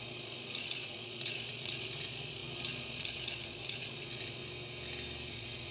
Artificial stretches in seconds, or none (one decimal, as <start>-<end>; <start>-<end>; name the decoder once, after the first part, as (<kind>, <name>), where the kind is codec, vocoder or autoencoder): 0.0-4.4 (vocoder, Vocos); 5.3-5.7